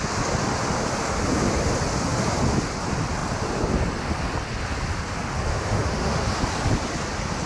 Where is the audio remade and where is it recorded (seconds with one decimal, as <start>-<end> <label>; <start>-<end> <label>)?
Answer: 0.0-5.5 recorded; 5.5-6.3 remade; 6.3-7.5 recorded